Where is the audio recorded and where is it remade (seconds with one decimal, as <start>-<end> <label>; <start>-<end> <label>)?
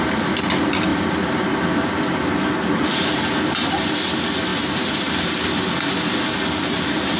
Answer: 0.0-7.2 recorded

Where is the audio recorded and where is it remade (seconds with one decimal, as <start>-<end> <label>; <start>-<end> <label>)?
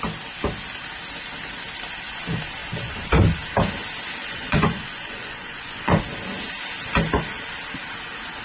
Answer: 0.0-2.6 recorded; 2.6-3.1 remade; 3.1-4.2 recorded; 4.2-6.0 remade; 6.0-8.4 recorded